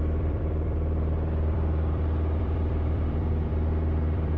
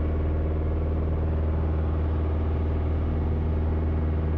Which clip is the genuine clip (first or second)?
second